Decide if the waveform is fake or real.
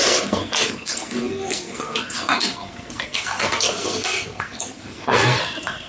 fake